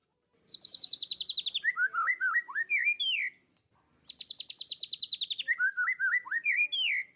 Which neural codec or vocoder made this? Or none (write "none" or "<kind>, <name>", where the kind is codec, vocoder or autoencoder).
none